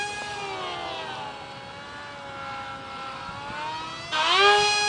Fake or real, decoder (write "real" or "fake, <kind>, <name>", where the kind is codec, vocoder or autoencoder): real